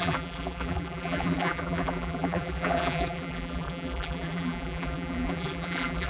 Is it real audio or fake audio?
fake